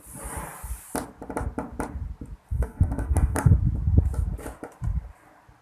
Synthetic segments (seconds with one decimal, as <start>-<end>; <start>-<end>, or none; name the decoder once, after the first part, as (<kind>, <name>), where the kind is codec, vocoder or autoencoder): 2.5-3.5 (codec, SNAC)

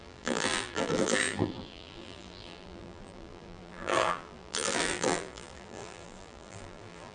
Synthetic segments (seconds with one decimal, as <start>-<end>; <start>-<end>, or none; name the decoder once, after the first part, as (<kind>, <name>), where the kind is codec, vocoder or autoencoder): 0.0-7.1 (vocoder, BigVGAN v2)

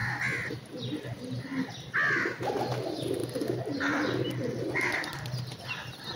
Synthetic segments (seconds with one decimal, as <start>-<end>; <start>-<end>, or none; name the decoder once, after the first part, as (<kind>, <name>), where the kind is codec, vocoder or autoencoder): none

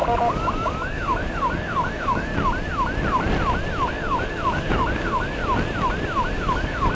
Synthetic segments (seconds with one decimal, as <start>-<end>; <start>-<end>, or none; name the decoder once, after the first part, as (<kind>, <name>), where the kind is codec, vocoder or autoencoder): 0.0-2.3 (codec, DAC); 3.9-5.4; 6.3-6.9

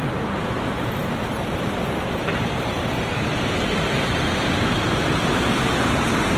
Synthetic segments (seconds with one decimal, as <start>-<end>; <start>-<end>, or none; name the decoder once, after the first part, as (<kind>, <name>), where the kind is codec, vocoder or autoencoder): 0.0-6.4 (vocoder, BigVGAN v2)

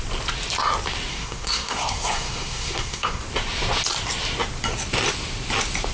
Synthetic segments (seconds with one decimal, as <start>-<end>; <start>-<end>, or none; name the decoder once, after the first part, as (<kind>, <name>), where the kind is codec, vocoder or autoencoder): 1.1-3.2 (codec, SNAC)

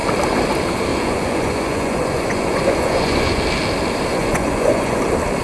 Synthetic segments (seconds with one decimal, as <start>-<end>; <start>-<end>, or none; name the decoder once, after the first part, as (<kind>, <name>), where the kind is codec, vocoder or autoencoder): 0.9-3.4 (vocoder, Vocos); 4.1-5.0